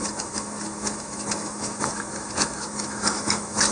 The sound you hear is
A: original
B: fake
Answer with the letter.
B